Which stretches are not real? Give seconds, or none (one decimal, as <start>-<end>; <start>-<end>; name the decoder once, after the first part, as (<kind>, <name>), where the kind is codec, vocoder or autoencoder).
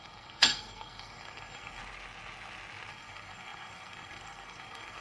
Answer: 0.0-1.8 (codec, SNAC); 2.9-5.0